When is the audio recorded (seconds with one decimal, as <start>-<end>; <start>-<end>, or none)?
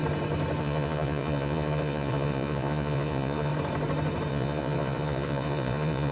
0.0-0.6; 3.5-4.3